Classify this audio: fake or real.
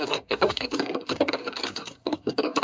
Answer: fake